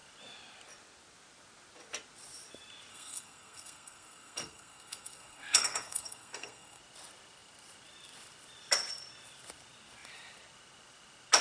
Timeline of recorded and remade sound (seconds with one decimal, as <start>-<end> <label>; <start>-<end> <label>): 0.0-2.9 recorded; 2.9-6.8 remade; 6.8-11.4 recorded